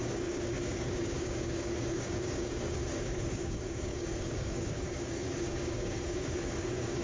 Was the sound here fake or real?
fake